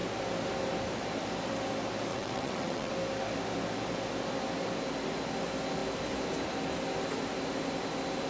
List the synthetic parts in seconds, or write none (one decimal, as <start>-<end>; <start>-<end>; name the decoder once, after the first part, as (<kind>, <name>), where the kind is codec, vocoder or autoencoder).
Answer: 2.1-2.9 (vocoder, WaveNeXt)